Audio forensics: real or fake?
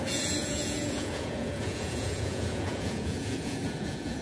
fake